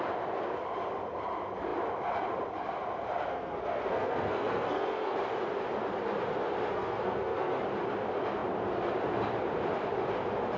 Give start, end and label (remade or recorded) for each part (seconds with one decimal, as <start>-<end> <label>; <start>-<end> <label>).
0.0-3.3 recorded; 3.3-5.2 remade; 5.2-6.7 recorded; 6.7-7.6 remade; 7.6-10.6 recorded